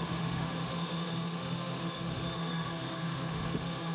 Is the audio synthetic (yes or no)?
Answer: yes